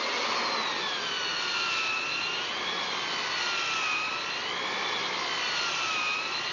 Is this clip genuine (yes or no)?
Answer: yes